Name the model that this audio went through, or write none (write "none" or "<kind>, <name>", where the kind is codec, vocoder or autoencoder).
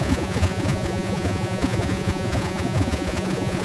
vocoder, Vocos